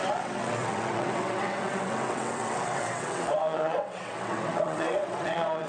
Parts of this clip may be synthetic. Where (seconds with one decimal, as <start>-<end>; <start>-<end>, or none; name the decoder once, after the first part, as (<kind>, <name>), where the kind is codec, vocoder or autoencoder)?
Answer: 0.0-5.7 (vocoder, WaveNeXt)